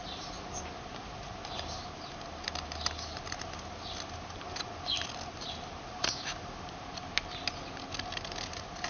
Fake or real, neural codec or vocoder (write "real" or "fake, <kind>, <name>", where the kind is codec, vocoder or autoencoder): real